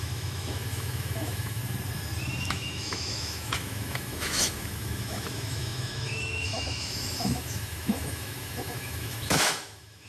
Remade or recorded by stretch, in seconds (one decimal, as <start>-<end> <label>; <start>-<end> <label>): 0.0-1.6 remade; 1.6-2.4 recorded; 2.4-10.1 remade